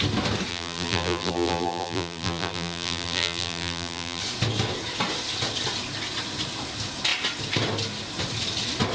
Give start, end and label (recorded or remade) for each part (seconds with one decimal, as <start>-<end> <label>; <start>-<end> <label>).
0.0-0.5 recorded; 0.5-4.2 remade; 4.2-8.9 recorded